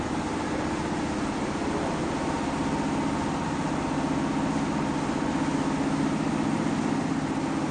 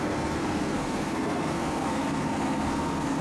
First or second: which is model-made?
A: second